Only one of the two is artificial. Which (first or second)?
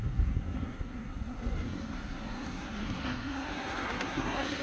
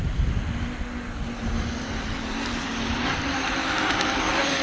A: first